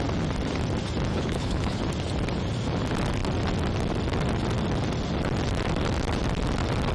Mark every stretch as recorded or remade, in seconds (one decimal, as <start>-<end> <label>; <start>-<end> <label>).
0.0-1.1 recorded; 1.1-1.8 remade; 1.8-6.9 recorded